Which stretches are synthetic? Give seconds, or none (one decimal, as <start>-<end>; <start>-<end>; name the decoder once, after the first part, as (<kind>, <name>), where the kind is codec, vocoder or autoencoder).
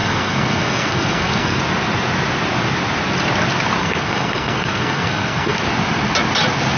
0.0-1.6 (codec, SNAC); 3.8-5.6